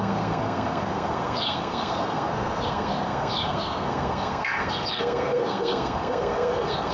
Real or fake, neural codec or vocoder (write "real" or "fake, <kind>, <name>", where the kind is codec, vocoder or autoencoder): fake, codec, SNAC